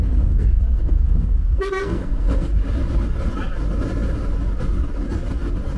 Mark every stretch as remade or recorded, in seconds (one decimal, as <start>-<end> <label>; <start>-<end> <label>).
0.0-2.5 remade; 2.5-5.8 recorded

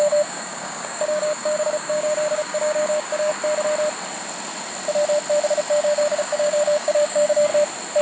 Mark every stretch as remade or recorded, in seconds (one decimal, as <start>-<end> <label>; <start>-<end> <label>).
0.0-3.3 remade; 3.3-5.7 recorded; 5.7-7.5 remade; 7.5-8.0 recorded

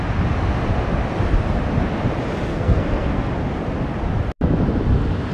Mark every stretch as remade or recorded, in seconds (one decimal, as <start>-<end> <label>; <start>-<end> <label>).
0.0-2.5 recorded; 2.5-3.3 remade; 3.3-5.3 recorded

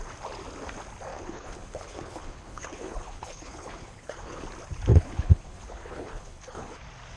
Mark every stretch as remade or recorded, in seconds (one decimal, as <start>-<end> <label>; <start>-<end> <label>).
0.0-1.1 recorded; 1.1-4.4 remade; 4.4-4.9 recorded; 4.9-6.8 remade; 6.8-7.2 recorded

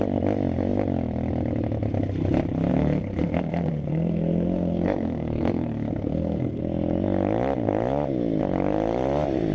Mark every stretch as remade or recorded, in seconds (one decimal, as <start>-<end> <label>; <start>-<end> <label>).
0.0-2.7 recorded; 2.7-6.6 remade; 6.6-9.5 recorded

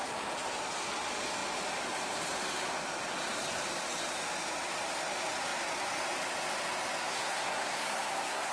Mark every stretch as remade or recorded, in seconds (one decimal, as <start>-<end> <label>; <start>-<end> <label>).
0.0-7.1 recorded; 7.1-8.5 remade